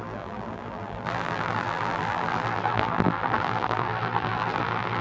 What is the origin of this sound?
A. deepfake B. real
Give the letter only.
A